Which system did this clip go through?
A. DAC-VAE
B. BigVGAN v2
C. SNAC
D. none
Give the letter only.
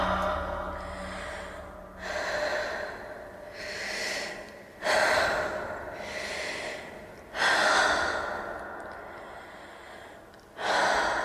D